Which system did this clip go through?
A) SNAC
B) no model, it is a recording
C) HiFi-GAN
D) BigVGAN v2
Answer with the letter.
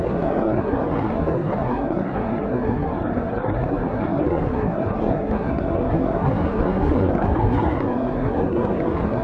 A